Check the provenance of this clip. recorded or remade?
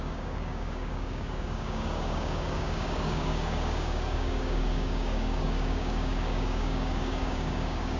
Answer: remade